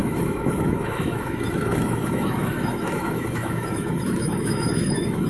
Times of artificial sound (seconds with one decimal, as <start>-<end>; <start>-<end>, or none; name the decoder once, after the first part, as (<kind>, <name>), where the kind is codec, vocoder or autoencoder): 0.0-5.3 (autoencoder, DAC-VAE)